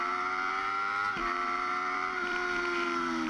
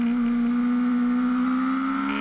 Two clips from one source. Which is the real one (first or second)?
second